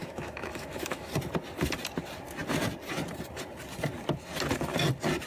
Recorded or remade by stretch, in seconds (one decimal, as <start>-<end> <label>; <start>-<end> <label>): 0.0-1.1 remade; 1.1-5.3 recorded